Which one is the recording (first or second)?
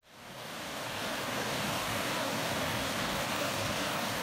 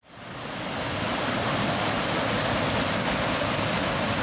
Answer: second